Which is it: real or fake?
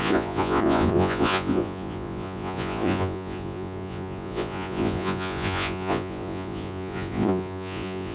fake